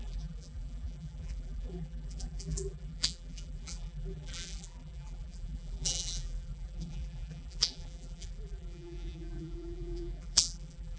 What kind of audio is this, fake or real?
fake